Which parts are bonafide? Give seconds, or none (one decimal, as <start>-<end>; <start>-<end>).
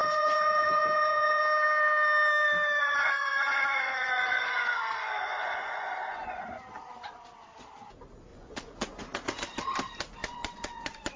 1.4-2.8; 6.4-8.3; 9.0-10.2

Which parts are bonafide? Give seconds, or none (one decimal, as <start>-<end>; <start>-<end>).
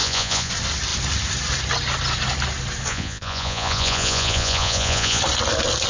0.5-2.9; 5.2-5.9